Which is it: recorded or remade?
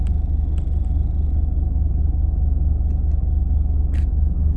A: recorded